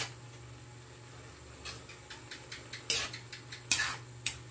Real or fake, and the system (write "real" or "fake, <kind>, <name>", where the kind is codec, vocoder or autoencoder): real